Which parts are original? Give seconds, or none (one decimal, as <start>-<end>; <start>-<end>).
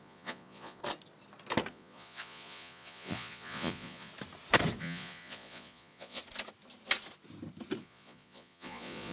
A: 0.8-1.7; 4.1-4.8; 6.2-7.8